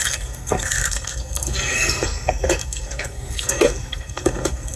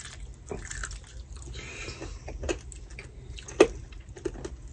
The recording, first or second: second